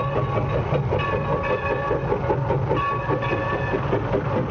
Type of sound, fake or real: real